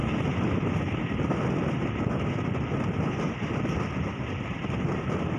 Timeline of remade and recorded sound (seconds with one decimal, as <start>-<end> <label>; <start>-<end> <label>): 0.0-5.4 recorded